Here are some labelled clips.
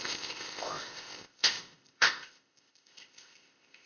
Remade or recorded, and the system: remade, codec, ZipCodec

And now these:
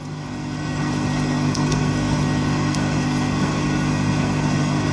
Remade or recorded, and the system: remade, codec, SNAC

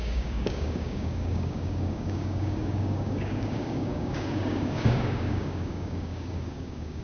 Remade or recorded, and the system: remade, codec, DAC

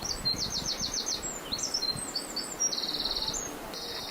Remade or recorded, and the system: recorded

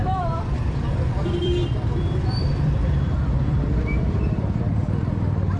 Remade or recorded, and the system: remade, vocoder, BigVGAN v2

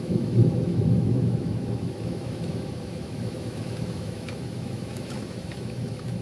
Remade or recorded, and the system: remade, autoencoder, DAC-VAE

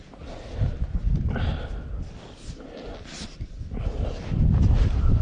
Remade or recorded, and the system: recorded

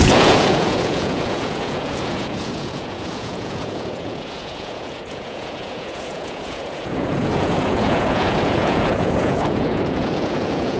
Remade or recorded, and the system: remade, vocoder, Vocos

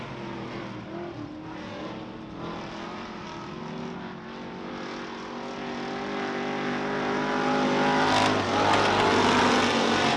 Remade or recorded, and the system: recorded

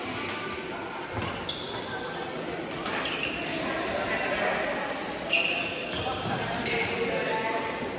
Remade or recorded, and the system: recorded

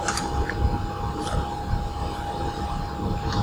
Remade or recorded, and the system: recorded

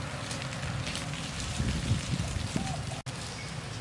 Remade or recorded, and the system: recorded